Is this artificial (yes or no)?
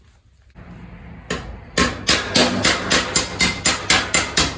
no